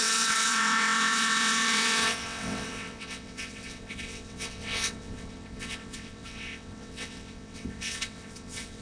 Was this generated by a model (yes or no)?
yes